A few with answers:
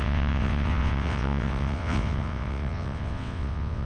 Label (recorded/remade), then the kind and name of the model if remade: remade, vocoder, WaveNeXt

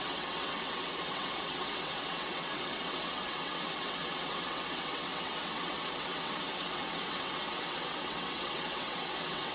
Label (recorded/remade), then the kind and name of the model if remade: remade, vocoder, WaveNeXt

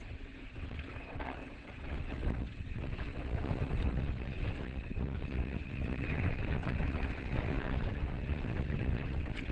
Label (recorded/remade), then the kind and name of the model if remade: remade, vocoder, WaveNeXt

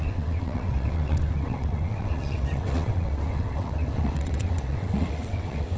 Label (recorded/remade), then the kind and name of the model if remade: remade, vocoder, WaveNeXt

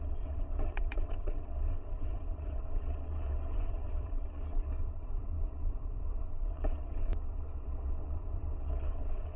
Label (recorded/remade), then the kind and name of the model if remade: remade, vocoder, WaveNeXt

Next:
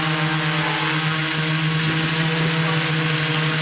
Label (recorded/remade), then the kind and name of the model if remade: recorded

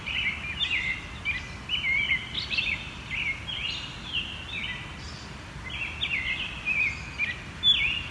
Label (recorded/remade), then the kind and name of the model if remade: recorded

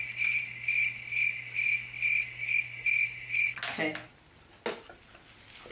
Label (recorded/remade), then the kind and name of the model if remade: recorded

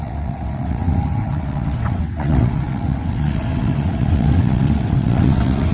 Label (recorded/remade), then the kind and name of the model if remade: remade, vocoder, WaveNeXt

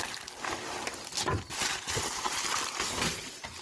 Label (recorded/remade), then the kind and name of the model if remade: recorded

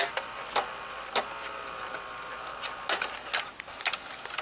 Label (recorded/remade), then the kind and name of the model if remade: recorded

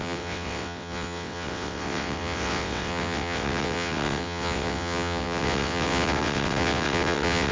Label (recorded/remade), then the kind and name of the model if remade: remade, vocoder, WaveNeXt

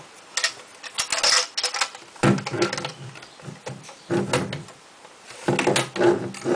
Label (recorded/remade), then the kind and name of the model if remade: recorded